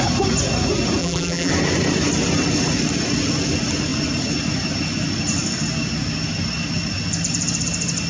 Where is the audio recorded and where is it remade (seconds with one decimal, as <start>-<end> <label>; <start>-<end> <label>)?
0.0-1.0 recorded; 1.0-1.5 remade; 1.5-8.1 recorded